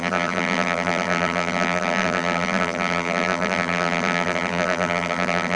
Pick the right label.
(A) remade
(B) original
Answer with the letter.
A